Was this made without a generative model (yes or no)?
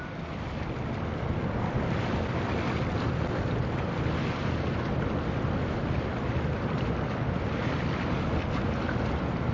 yes